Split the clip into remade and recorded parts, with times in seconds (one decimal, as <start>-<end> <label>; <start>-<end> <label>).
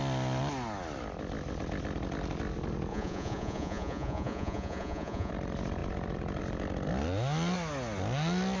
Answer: 0.0-2.9 recorded; 2.9-5.3 remade; 5.3-8.6 recorded